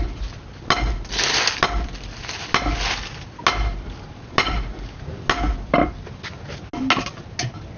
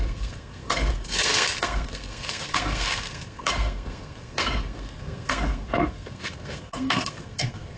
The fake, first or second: second